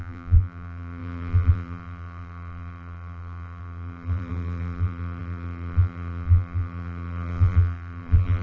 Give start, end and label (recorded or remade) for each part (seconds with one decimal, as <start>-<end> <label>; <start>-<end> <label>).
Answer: 0.0-8.4 remade